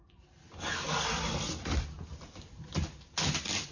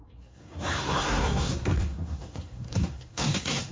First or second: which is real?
first